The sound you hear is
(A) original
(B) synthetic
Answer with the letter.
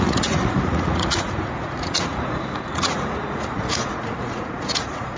B